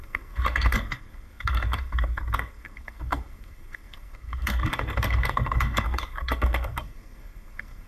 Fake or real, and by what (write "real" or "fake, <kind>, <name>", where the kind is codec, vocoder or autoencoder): fake, codec, SNAC